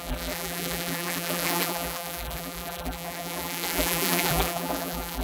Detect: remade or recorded remade